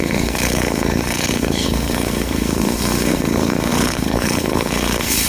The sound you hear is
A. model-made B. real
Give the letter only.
A